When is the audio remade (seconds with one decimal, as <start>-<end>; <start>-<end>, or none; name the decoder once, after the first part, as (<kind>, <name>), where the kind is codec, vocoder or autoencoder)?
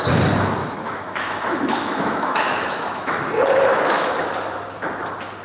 0.6-3.2 (autoencoder, DAC-VAE); 3.7-4.3